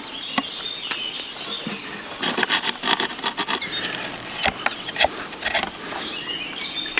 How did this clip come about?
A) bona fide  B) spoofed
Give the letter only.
A